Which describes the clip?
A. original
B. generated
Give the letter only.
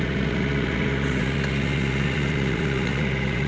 B